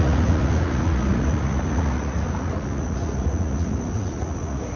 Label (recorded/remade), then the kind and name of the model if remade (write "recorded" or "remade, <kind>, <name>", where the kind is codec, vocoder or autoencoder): remade, vocoder, Vocos